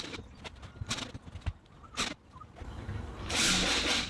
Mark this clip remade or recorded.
recorded